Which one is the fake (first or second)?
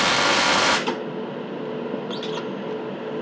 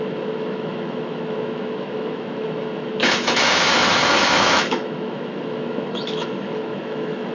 second